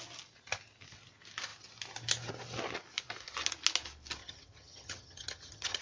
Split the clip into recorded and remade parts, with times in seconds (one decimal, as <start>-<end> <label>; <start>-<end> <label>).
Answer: 0.0-4.2 recorded; 4.2-5.8 remade